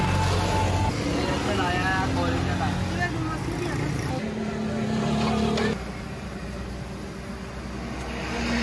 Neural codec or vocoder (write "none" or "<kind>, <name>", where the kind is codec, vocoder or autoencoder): none